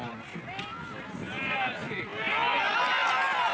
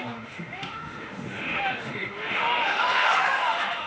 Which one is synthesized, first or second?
second